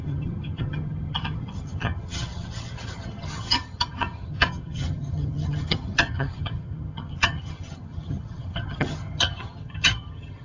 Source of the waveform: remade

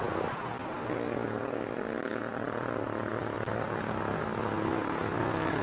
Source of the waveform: recorded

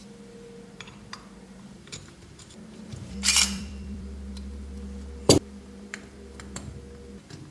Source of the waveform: remade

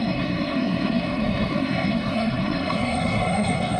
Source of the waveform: remade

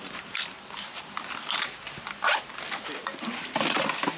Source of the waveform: recorded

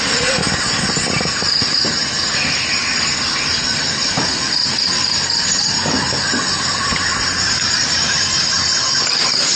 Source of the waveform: recorded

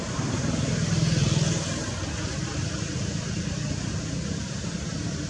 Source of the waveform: recorded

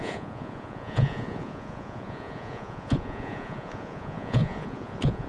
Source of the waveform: remade